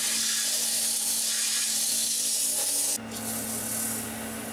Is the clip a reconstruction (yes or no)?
no